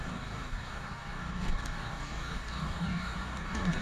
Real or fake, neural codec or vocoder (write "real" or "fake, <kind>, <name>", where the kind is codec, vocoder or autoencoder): fake, codec, DAC